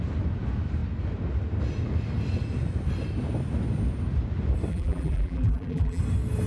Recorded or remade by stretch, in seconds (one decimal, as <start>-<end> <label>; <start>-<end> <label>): 0.0-4.7 recorded; 4.7-6.0 remade; 6.0-6.5 recorded